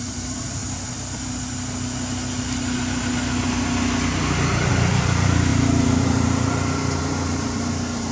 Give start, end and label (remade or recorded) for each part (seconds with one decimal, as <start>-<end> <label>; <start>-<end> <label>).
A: 0.0-0.6 remade; 0.6-4.7 recorded; 4.7-8.1 remade

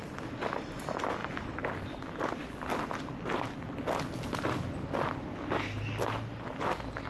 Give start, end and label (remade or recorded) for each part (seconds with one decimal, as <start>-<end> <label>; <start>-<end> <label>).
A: 0.0-7.1 recorded

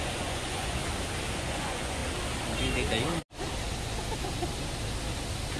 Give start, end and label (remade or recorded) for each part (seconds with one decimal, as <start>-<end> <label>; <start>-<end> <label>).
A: 0.0-0.8 remade; 0.8-1.3 recorded; 1.3-2.0 remade; 2.0-5.6 recorded

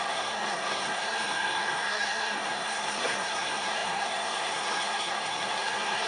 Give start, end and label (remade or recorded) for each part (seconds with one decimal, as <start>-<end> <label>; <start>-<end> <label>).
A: 0.0-6.1 remade

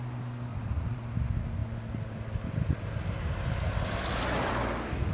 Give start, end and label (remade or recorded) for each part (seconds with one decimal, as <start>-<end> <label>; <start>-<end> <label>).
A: 0.0-0.5 recorded; 0.5-1.0 remade; 1.0-5.1 recorded

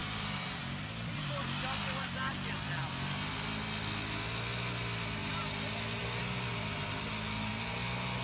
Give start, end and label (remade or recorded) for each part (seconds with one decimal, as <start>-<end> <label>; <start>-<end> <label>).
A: 0.0-0.6 remade; 0.6-8.2 recorded

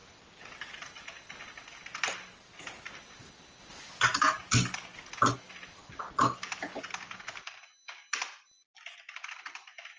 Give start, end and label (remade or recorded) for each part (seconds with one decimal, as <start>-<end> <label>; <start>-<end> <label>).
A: 0.0-10.0 recorded